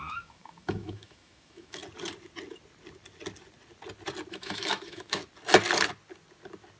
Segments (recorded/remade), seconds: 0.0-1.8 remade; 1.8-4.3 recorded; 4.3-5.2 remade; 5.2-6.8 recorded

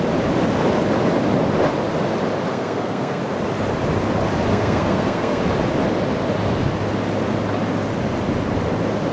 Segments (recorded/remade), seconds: 0.0-2.5 recorded; 2.5-3.2 remade; 3.2-4.5 recorded; 4.5-5.4 remade; 5.4-9.1 recorded

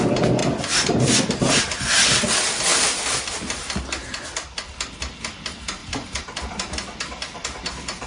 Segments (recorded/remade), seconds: 0.0-0.4 recorded; 0.4-1.6 remade; 1.6-2.7 recorded; 2.7-3.6 remade; 3.6-5.8 recorded; 5.8-6.7 remade; 6.7-8.1 recorded

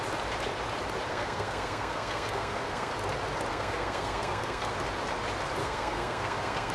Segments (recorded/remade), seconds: 0.0-1.1 recorded; 1.1-2.9 remade; 2.9-3.5 recorded; 3.5-4.7 remade; 4.7-5.6 recorded; 5.6-6.7 remade

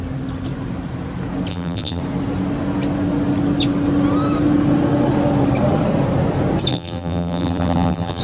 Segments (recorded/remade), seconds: 0.0-1.5 recorded; 1.5-2.0 remade; 2.0-6.7 recorded; 6.7-8.2 remade

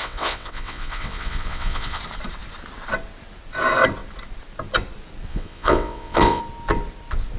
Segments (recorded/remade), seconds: 0.0-2.0 remade; 2.0-5.3 recorded; 5.3-6.4 remade; 6.4-7.4 recorded